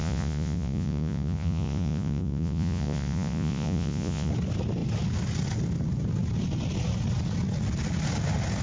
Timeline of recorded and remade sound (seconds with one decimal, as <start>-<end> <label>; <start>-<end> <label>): 0.0-4.3 remade; 4.3-8.6 recorded